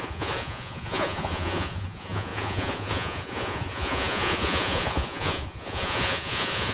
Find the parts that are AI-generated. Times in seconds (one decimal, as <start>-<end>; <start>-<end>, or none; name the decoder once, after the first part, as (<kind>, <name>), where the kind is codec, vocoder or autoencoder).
0.0-6.7 (vocoder, Vocos)